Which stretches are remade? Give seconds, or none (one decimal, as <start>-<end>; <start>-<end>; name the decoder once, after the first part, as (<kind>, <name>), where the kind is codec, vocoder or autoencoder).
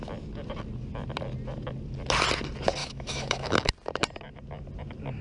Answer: 2.8-3.7 (autoencoder, DAC-VAE)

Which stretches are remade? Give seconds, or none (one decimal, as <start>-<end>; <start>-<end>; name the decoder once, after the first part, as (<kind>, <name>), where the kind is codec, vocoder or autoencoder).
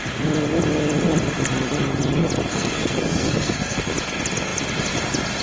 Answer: 2.5-3.9 (codec, SNAC)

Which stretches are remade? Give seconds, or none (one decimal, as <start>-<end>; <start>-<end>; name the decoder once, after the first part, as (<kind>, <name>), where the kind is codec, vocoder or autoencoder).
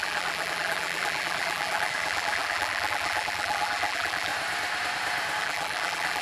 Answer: 0.0-4.3 (vocoder, BigVGAN v2); 5.4-6.2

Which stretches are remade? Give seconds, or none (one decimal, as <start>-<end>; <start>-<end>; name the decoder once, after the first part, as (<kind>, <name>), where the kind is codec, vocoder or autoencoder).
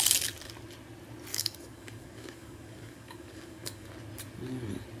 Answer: 1.3-3.9 (codec, DAC)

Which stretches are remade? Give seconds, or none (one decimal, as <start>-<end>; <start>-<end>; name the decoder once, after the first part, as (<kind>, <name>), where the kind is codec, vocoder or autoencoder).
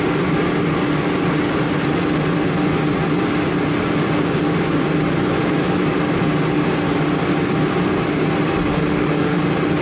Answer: 8.7-9.4 (autoencoder, DAC-VAE)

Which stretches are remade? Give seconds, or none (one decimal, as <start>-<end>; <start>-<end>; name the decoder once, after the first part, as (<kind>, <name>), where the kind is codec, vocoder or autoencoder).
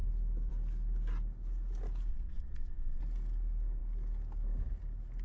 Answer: 2.1-3.0 (vocoder, WaveNeXt)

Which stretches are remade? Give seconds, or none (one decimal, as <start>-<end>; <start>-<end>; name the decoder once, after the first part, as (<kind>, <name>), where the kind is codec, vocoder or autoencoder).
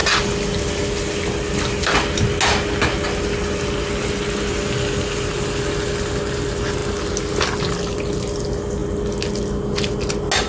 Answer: none